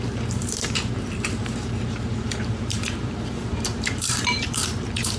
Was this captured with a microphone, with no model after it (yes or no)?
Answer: no